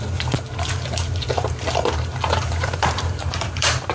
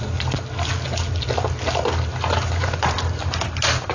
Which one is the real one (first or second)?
second